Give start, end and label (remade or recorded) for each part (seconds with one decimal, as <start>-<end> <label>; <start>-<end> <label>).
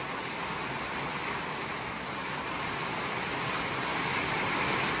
0.0-5.0 recorded